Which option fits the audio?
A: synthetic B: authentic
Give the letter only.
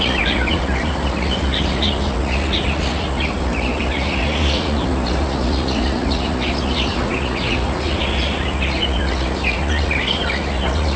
A